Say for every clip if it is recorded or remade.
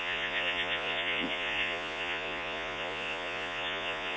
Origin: remade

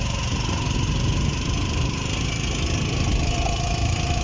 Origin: recorded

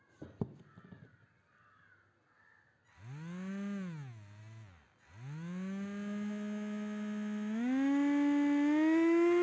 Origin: recorded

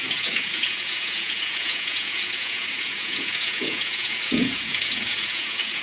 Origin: remade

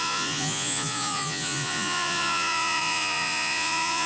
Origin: remade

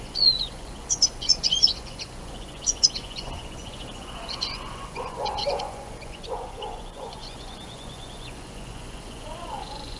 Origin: remade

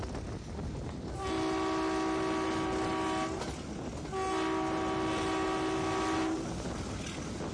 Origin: recorded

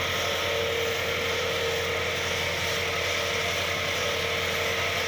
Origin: recorded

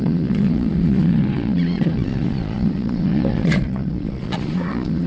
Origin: remade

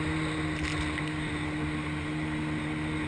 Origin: recorded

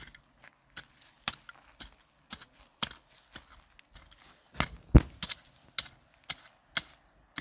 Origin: recorded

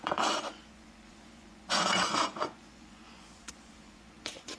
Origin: remade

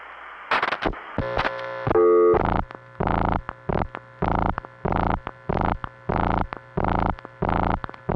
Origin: recorded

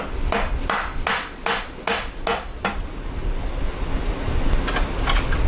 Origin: recorded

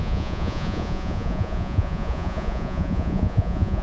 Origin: remade